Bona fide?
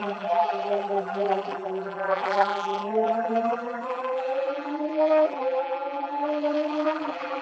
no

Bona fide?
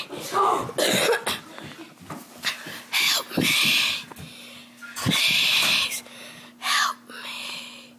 yes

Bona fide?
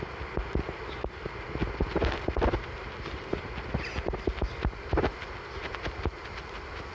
yes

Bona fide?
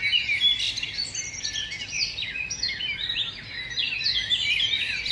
yes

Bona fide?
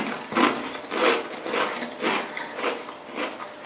yes